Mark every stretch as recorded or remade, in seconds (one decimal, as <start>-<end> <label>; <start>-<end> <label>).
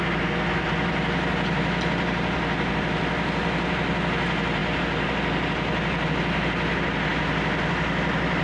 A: 0.0-8.4 recorded